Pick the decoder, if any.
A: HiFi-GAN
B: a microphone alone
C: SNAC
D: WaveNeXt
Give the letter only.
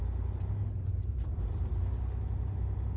B